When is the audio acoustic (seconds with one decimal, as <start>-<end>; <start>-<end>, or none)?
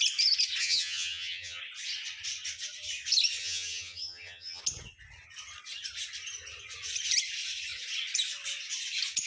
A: 0.0-0.6; 1.6-3.4; 4.6-9.3